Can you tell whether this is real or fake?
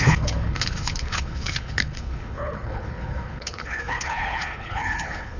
fake